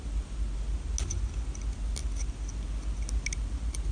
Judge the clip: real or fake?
real